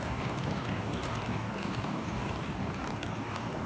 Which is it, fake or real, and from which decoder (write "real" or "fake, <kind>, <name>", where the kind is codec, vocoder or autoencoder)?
fake, codec, DAC